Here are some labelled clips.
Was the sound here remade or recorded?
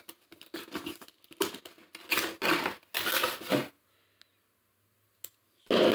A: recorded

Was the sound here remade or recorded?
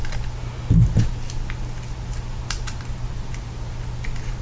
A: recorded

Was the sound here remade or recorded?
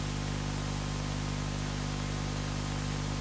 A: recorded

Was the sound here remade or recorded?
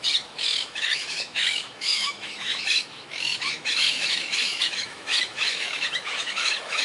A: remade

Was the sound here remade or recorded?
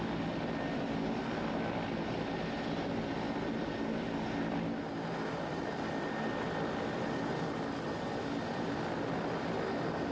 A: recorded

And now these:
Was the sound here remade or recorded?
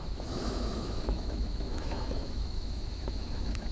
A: remade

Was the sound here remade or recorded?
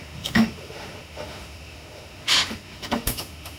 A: remade